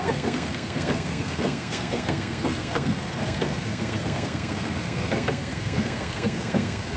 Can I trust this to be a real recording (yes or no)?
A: no